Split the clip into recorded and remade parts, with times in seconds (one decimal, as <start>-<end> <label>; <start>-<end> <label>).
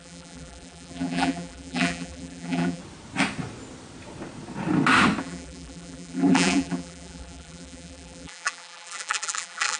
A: 0.0-2.8 remade; 2.8-5.2 recorded; 5.2-9.8 remade